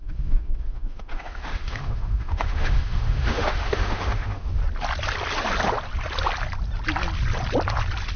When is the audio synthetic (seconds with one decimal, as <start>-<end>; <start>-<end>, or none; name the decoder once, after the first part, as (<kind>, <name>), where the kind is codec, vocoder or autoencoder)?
0.0-4.6 (autoencoder, DAC-VAE)